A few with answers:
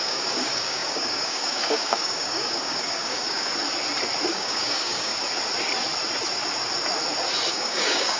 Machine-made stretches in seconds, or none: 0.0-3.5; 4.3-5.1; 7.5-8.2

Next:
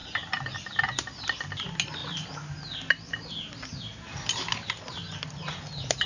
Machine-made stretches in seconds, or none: none

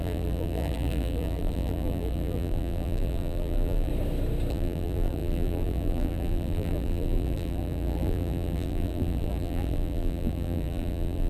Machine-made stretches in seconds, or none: 0.0-3.9; 4.5-11.3

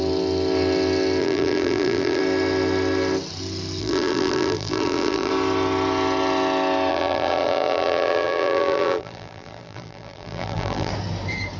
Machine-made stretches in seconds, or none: 1.2-2.2; 3.8-5.3; 6.9-10.9